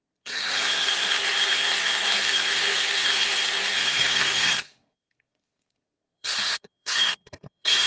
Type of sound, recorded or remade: remade